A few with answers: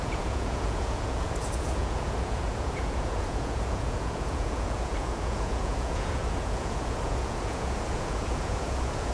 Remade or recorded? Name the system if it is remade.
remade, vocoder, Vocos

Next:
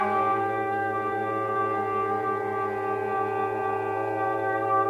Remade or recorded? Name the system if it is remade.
remade, vocoder, BigVGAN v2